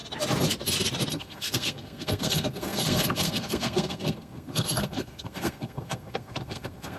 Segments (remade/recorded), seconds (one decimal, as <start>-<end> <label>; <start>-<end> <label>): 0.0-1.1 recorded; 1.1-7.0 remade